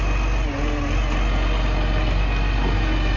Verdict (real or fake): real